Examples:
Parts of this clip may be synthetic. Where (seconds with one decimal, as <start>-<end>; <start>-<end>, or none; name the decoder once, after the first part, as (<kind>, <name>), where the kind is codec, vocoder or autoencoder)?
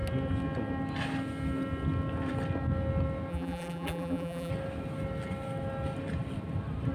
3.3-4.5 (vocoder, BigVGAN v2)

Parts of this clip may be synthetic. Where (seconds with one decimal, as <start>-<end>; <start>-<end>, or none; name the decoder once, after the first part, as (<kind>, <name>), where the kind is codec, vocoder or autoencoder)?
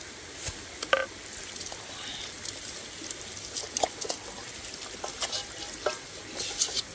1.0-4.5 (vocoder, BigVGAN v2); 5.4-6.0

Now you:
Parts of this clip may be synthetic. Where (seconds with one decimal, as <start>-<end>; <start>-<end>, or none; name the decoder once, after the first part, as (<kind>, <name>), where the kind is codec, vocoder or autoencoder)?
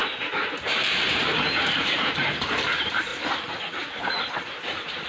0.0-3.1 (vocoder, BigVGAN v2)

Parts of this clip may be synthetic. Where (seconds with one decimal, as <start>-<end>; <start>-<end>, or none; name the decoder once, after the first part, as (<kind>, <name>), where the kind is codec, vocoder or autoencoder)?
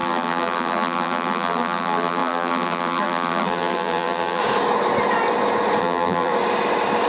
0.0-4.4 (vocoder, BigVGAN v2); 5.8-6.3